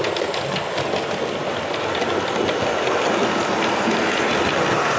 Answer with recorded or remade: recorded